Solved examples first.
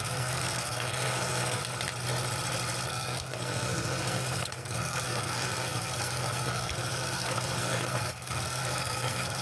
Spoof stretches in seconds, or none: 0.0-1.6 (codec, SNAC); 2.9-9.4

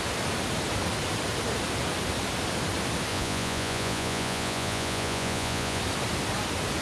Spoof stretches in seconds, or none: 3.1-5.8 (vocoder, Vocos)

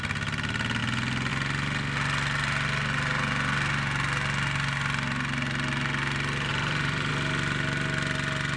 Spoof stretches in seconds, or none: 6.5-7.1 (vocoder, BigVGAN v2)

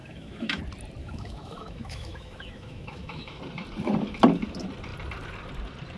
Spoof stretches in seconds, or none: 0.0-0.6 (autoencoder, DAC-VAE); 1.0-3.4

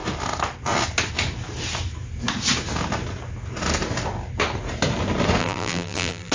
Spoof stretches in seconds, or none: 5.4-6.3 (vocoder, BigVGAN v2)

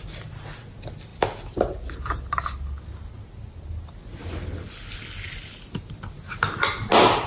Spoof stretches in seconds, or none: none

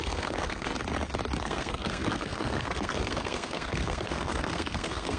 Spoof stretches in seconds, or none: 0.0-0.7 (codec, SNAC); 1.4-5.2